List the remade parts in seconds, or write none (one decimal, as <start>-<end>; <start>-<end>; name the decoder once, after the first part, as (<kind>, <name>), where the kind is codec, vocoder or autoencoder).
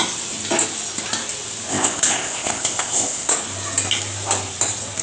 1.7-3.3 (codec, ZipCodec)